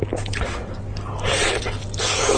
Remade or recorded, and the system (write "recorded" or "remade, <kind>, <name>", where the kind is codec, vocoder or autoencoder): recorded